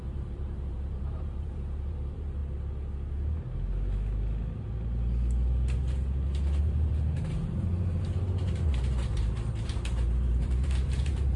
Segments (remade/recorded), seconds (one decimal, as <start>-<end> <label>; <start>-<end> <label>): 0.0-2.4 remade; 2.4-6.6 recorded; 6.6-11.4 remade